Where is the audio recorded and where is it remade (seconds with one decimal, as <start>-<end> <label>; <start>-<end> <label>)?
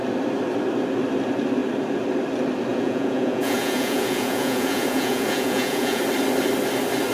0.0-2.7 recorded; 2.7-6.0 remade; 6.0-7.1 recorded